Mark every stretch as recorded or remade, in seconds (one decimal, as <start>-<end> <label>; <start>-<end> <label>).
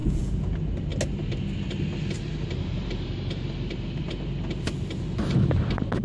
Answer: 0.0-0.5 remade; 0.5-6.0 recorded